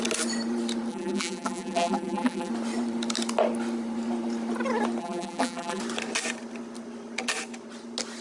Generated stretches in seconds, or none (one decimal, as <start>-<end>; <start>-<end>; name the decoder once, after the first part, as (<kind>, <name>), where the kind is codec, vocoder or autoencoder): 0.9-2.5 (vocoder, BigVGAN v2); 5.0-5.8